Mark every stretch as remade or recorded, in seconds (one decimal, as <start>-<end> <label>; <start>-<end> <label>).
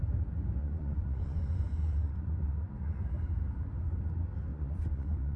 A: 0.0-0.6 recorded; 0.6-3.1 remade; 3.1-4.5 recorded; 4.5-5.4 remade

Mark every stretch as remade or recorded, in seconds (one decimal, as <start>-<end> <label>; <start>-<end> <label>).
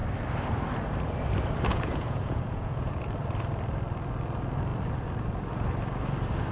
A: 0.0-1.7 recorded; 1.7-2.9 remade; 2.9-6.5 recorded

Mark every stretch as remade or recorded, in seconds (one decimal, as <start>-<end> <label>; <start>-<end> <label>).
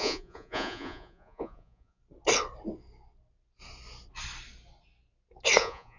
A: 0.0-2.0 remade; 2.0-5.6 recorded; 5.6-6.0 remade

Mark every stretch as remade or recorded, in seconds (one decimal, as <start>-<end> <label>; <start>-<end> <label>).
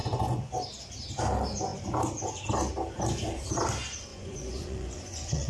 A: 0.0-0.5 remade; 0.5-4.1 recorded; 4.1-5.5 remade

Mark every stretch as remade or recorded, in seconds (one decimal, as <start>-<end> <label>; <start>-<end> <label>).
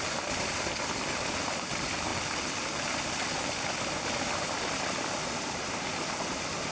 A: 0.0-6.7 recorded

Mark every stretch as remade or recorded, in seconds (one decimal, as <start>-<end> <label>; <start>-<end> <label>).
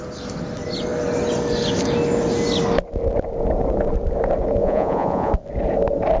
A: 0.0-4.6 recorded; 4.6-5.3 remade; 5.3-6.2 recorded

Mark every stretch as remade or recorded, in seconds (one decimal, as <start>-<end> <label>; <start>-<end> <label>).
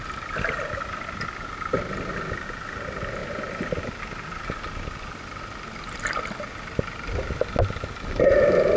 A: 0.0-8.8 recorded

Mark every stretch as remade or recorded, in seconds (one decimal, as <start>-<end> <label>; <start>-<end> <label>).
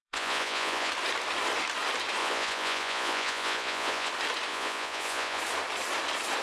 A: 0.0-0.9 remade; 0.9-2.2 recorded; 2.2-4.1 remade; 4.1-4.5 recorded; 4.5-5.4 remade; 5.4-6.4 recorded